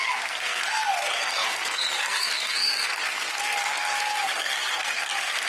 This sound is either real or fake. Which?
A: fake